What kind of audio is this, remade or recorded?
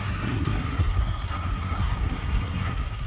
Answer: remade